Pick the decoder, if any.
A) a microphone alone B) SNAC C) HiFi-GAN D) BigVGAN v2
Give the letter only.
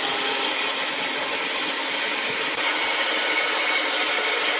A